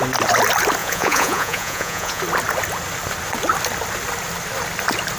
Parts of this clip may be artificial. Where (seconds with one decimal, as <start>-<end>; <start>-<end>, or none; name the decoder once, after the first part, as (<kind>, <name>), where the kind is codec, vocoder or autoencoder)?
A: 0.8-2.2 (vocoder, Vocos)